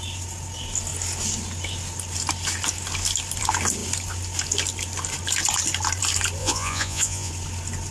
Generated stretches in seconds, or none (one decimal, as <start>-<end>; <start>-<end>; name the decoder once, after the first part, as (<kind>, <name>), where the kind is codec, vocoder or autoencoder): 6.4-7.3 (vocoder, Vocos)